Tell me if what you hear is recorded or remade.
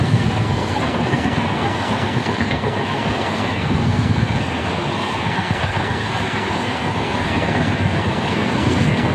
remade